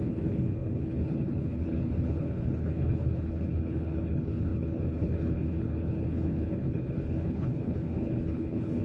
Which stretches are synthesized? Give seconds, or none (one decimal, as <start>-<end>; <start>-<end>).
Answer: 0.0-8.8